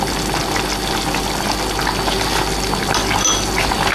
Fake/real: real